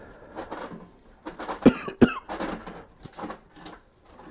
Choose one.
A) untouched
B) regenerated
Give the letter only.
A